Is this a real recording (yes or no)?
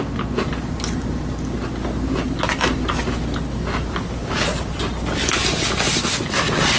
yes